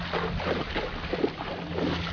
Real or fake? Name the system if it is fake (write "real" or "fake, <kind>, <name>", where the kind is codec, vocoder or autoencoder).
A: real